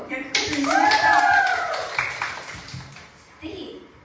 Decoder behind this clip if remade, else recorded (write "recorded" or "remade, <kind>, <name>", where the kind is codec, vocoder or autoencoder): remade, vocoder, BigVGAN v2